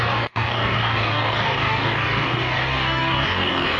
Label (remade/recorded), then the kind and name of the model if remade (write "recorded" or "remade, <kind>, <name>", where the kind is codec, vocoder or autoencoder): remade, codec, DAC